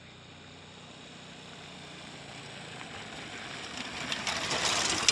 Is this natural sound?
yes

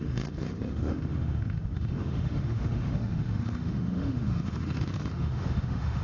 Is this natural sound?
no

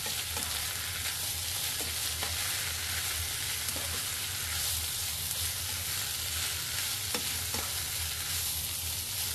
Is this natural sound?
yes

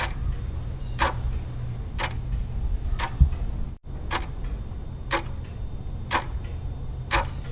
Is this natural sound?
yes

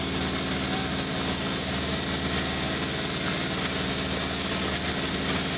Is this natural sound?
yes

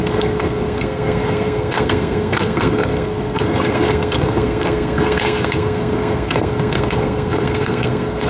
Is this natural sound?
no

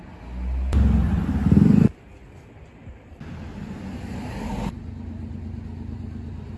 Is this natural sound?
yes